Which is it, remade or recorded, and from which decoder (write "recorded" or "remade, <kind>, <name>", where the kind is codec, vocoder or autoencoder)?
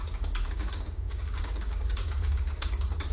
remade, codec, DAC